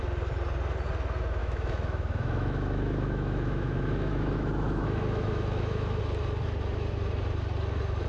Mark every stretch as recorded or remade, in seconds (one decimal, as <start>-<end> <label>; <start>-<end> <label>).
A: 0.0-1.4 recorded; 1.4-6.0 remade; 6.0-8.1 recorded